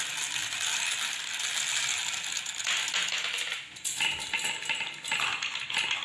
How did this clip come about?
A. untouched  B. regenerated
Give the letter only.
A